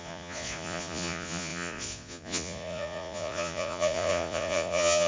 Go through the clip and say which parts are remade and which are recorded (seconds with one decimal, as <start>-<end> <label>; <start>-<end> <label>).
0.0-5.1 remade